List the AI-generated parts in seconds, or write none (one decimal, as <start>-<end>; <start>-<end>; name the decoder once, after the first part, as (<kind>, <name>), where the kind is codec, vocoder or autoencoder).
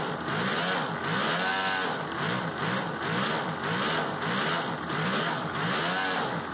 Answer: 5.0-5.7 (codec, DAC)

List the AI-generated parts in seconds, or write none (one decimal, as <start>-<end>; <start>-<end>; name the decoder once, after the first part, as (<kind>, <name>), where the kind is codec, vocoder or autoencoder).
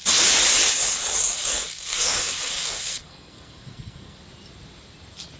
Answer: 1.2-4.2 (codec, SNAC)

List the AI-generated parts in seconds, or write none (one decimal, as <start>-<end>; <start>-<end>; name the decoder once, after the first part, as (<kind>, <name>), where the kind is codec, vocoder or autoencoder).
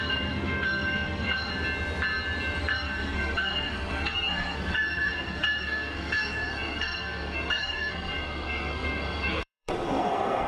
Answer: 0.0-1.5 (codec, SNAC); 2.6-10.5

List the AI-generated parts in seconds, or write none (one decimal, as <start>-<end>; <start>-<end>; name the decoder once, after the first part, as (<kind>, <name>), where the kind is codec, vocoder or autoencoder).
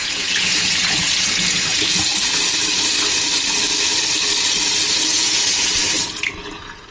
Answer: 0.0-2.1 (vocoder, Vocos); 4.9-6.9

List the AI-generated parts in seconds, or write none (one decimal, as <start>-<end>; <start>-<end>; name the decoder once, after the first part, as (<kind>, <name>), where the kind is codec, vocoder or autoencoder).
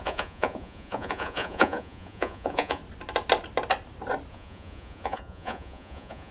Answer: 0.0-2.8 (vocoder, Vocos); 4.3-6.3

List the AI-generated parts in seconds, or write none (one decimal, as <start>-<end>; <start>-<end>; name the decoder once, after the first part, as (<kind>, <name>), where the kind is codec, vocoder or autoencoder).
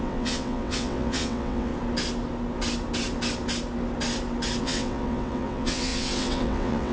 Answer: 0.0-1.7 (vocoder, WaveNeXt); 4.6-6.9